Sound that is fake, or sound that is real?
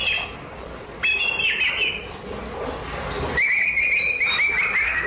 real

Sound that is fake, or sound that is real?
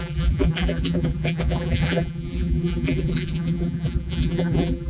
fake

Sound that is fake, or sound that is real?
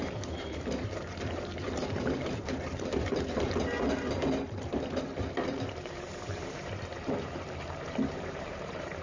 fake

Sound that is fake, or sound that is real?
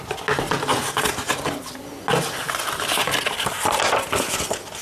real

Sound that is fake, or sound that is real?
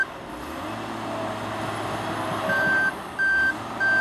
real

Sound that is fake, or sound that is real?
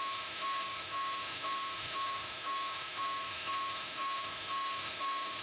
fake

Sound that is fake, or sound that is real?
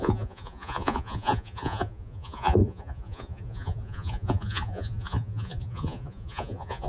fake